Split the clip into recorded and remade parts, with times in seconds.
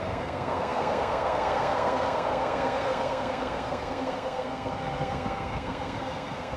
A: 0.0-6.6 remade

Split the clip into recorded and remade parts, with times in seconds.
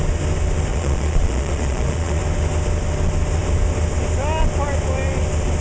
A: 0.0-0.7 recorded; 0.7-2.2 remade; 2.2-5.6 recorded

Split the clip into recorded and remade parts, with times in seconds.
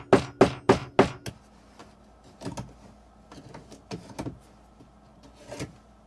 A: 0.0-6.1 recorded